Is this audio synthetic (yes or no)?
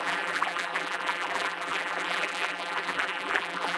yes